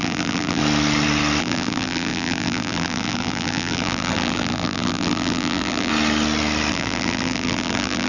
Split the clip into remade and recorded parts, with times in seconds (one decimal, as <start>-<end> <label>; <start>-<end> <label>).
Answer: 0.0-0.6 remade; 0.6-1.4 recorded; 1.4-5.9 remade; 5.9-6.7 recorded; 6.7-8.1 remade